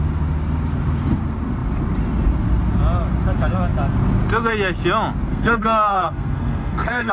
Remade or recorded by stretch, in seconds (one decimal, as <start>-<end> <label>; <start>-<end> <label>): 0.0-5.3 recorded; 5.3-7.1 remade